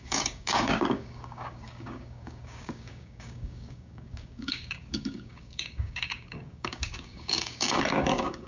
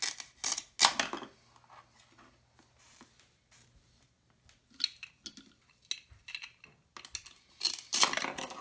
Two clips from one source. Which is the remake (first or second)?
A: first